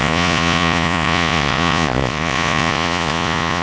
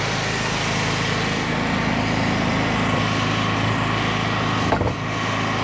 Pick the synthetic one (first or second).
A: first